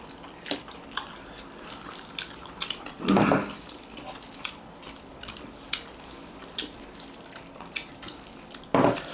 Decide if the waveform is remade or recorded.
recorded